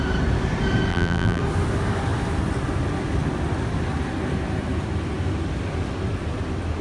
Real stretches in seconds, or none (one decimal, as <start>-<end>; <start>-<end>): 0.0-0.9; 1.4-6.8